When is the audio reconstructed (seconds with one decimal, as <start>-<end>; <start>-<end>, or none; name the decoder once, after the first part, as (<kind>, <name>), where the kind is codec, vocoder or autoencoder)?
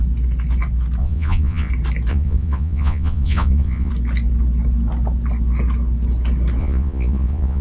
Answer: 1.0-1.7 (vocoder, Vocos); 2.1-3.9; 6.6-7.6